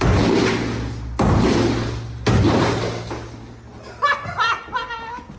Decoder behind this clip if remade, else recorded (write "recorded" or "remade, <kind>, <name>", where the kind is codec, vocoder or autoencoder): recorded